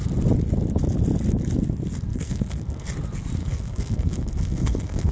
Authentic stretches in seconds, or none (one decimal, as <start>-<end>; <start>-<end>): 0.0-2.1; 2.9-3.4